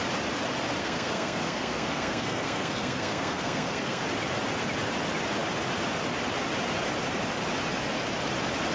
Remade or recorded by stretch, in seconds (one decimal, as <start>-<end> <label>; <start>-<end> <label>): 0.0-0.8 recorded; 0.8-4.0 remade; 4.0-8.7 recorded

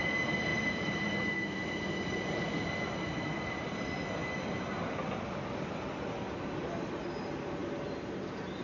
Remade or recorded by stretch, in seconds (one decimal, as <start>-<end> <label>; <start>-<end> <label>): 0.0-8.6 recorded

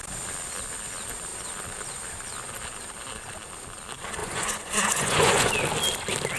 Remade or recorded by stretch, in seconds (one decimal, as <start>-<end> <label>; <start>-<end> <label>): 0.0-4.2 recorded; 4.2-5.5 remade; 5.5-6.4 recorded

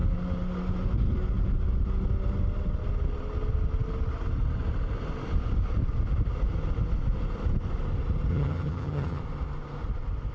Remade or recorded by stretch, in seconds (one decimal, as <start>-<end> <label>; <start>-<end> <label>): 0.0-8.3 recorded; 8.3-9.2 remade; 9.2-10.3 recorded

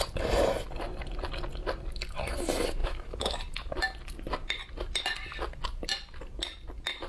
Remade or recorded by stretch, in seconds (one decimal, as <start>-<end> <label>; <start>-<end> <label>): 0.0-2.8 recorded; 2.8-3.4 remade; 3.4-7.1 recorded

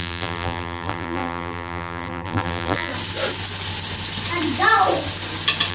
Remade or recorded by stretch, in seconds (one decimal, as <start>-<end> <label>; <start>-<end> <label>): 0.0-2.9 remade; 2.9-5.7 recorded

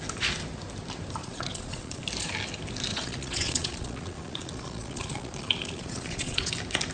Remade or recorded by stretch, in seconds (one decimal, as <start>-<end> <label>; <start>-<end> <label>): 0.0-1.2 recorded; 1.2-2.0 remade; 2.0-2.9 recorded; 2.9-6.5 remade; 6.5-6.9 recorded

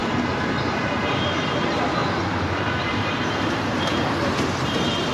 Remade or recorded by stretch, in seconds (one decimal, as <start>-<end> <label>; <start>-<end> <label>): 0.0-5.1 remade